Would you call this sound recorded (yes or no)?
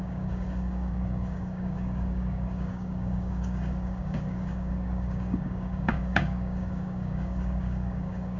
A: no